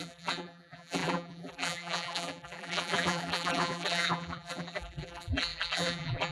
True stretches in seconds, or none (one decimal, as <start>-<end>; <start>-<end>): none